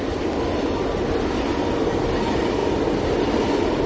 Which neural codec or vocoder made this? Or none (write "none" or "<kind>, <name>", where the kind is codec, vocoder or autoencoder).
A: none